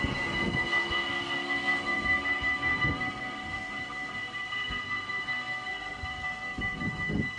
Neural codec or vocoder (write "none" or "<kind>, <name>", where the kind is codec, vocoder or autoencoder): codec, SNAC